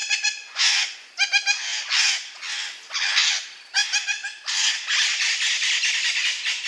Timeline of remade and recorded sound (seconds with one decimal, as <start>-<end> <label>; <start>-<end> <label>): 0.0-1.1 remade; 1.1-6.7 recorded